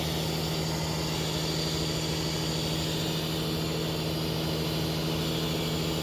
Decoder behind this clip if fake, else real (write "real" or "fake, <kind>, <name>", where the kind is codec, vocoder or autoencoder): real